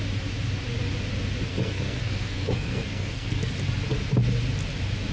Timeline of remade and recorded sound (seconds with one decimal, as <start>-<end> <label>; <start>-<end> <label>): 0.0-1.5 recorded; 1.5-3.5 remade; 3.5-5.1 recorded